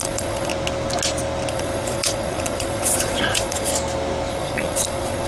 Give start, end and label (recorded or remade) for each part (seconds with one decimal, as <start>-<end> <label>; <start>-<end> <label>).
0.0-0.5 remade; 0.5-1.5 recorded; 1.5-3.7 remade; 3.7-4.3 recorded; 4.3-5.3 remade